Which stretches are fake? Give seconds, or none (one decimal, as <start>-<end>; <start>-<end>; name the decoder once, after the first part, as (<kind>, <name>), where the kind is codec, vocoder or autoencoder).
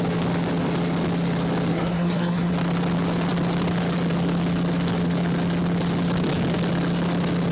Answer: 1.7-2.5 (codec, SNAC)